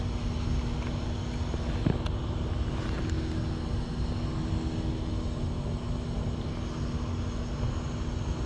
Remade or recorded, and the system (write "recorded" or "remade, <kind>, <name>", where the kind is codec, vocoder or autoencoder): recorded